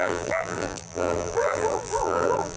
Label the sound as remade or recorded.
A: remade